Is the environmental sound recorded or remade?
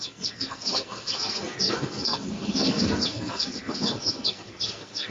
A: remade